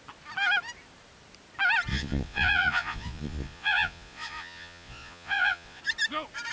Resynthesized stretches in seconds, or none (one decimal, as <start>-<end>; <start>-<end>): 1.9-5.8